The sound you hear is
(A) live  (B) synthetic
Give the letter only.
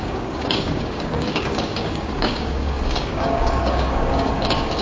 B